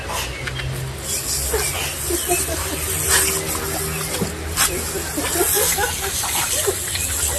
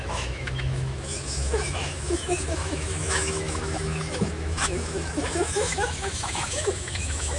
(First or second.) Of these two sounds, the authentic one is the first